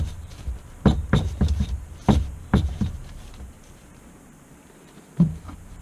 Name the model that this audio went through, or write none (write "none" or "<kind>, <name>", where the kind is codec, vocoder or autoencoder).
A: vocoder, BigVGAN v2